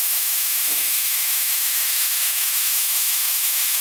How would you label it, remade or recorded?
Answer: remade